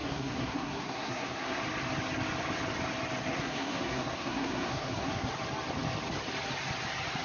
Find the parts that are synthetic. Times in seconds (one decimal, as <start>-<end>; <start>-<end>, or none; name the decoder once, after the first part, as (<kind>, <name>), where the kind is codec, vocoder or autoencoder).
0.0-1.6 (codec, SNAC); 3.3-5.3